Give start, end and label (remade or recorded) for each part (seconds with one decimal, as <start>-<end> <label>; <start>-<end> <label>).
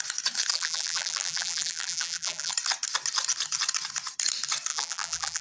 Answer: 0.0-0.5 recorded; 0.5-2.5 remade; 2.5-4.7 recorded; 4.7-5.4 remade